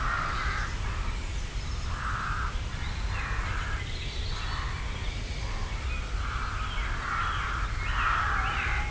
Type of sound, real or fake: real